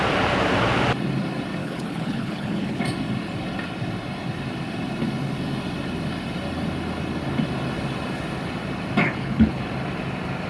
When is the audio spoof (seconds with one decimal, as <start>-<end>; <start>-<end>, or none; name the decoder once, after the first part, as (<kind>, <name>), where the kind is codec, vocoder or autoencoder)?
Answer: 1.6-2.8 (codec, HILCodec); 9.0-9.6